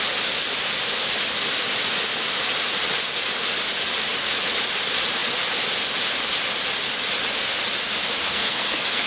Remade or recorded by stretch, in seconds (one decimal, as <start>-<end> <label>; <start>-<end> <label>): 0.0-8.2 recorded; 8.2-9.1 remade